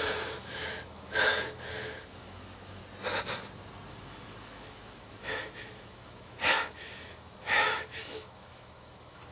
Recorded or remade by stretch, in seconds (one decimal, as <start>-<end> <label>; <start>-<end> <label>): 0.0-2.8 remade; 2.8-3.9 recorded; 3.9-9.3 remade